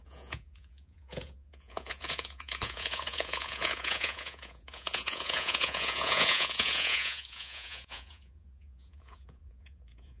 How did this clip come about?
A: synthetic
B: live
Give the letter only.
A